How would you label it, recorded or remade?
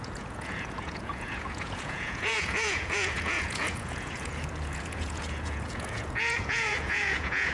remade